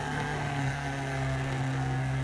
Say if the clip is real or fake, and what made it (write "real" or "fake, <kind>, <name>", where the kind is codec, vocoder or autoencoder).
fake, codec, SNAC